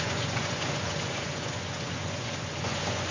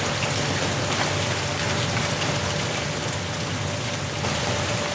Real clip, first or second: second